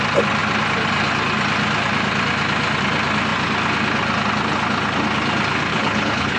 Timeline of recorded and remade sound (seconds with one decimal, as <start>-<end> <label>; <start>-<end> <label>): 0.0-5.7 recorded; 5.7-6.4 remade